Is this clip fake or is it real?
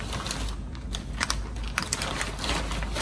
real